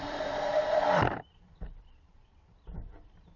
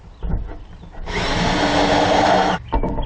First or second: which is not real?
first